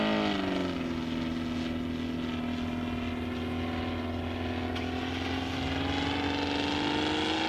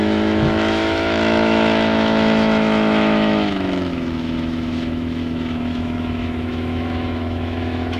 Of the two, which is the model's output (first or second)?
second